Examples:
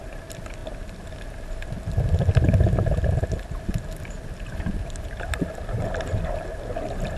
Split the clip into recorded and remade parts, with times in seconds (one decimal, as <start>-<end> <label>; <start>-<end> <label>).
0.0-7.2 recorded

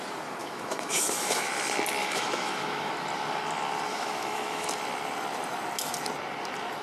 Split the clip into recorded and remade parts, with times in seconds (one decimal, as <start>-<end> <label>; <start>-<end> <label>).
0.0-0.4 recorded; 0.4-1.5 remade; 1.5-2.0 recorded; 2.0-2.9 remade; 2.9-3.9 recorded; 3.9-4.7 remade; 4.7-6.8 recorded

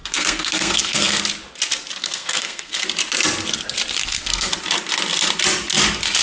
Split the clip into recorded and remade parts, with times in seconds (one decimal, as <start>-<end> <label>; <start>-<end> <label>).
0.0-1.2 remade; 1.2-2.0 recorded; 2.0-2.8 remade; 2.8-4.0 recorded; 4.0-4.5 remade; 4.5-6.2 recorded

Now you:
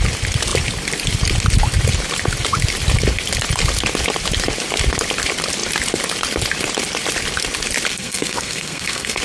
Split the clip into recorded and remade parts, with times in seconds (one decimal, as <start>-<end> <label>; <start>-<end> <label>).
0.0-7.9 recorded; 7.9-9.2 remade

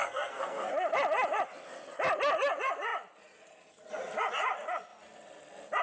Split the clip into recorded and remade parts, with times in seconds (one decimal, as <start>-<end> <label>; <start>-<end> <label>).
0.0-0.7 remade; 0.7-5.8 recorded